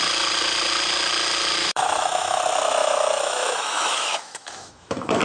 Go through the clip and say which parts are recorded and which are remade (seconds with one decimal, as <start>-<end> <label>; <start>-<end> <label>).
0.0-1.6 recorded; 1.6-2.4 remade; 2.4-2.8 recorded; 2.8-5.2 remade